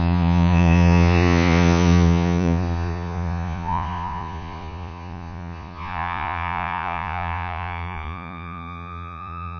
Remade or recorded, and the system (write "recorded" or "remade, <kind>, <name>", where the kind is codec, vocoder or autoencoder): remade, vocoder, Vocos